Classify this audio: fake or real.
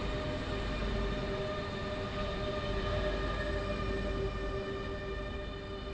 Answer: real